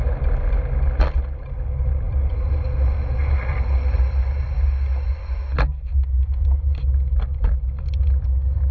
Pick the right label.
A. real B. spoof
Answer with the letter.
A